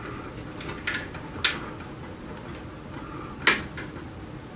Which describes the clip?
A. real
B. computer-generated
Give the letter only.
A